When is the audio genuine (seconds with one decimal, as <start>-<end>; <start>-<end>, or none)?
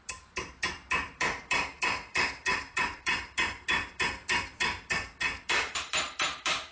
3.7-5.4